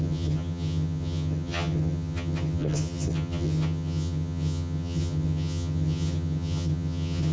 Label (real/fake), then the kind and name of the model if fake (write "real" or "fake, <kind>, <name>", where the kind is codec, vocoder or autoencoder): fake, vocoder, HiFi-GAN